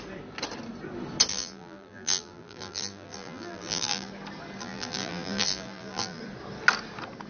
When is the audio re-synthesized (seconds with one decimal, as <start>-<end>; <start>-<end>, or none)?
1.3-4.1; 4.6-6.2